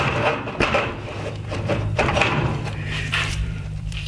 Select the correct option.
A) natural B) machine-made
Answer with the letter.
B